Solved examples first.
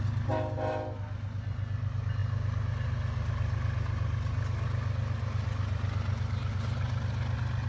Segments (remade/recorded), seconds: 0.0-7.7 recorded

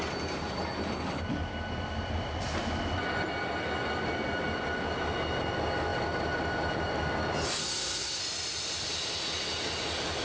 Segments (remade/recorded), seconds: 0.0-7.6 recorded; 7.6-8.2 remade; 8.2-10.2 recorded

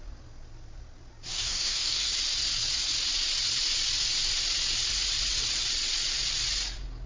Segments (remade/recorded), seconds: 0.0-1.3 recorded; 1.3-2.1 remade; 2.1-7.1 recorded

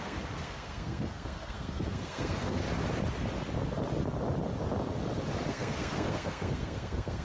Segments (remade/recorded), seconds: 0.0-2.6 remade; 2.6-5.5 recorded; 5.5-7.2 remade

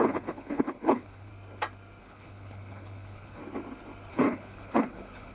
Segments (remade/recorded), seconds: 0.0-1.3 remade; 1.3-2.0 recorded; 2.0-3.4 remade; 3.4-4.1 recorded; 4.1-5.3 remade